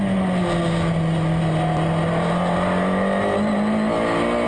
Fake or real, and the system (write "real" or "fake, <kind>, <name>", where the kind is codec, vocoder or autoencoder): real